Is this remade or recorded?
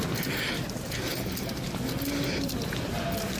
recorded